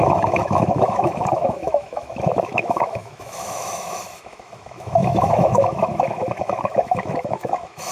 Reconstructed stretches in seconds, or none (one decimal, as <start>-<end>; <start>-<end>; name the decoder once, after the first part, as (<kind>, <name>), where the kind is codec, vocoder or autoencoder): 0.0-7.9 (autoencoder, DAC-VAE)